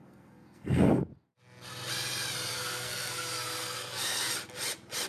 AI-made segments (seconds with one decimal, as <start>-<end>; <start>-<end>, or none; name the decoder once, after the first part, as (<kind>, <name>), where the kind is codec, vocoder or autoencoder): 0.0-1.1 (codec, SNAC); 2.5-4.3